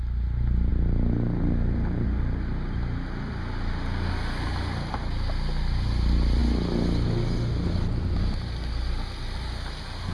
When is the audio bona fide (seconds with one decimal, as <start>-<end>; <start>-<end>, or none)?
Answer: 0.0-10.1